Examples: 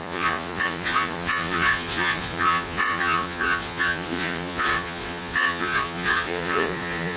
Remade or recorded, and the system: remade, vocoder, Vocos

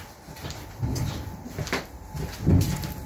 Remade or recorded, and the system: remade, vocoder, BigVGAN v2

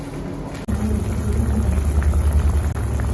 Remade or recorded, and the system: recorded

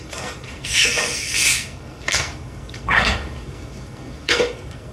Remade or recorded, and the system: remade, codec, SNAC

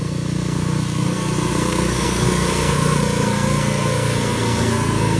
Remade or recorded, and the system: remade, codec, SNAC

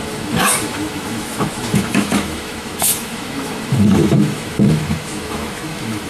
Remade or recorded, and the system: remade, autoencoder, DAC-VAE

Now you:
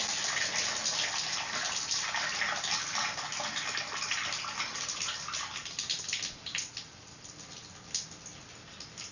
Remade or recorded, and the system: recorded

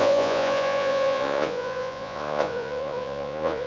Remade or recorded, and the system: remade, vocoder, Vocos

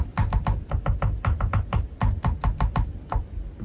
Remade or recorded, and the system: recorded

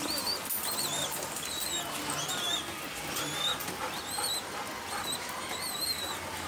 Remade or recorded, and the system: recorded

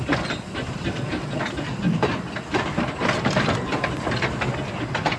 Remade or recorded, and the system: recorded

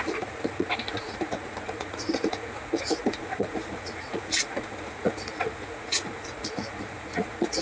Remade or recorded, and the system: remade, vocoder, Vocos